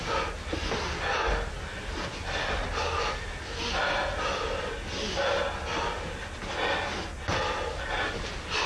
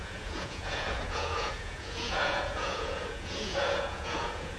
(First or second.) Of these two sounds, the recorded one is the first